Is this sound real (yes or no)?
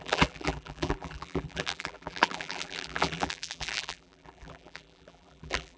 no